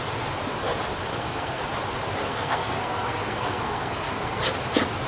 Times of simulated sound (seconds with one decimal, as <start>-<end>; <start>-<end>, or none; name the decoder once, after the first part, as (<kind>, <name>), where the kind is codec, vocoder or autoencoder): 1.1-1.6 (codec, SNAC); 2.2-4.4